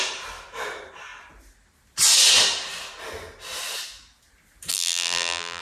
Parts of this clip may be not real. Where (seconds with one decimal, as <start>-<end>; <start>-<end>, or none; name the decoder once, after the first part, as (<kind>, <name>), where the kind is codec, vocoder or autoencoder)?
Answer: 4.7-5.6 (vocoder, BigVGAN v2)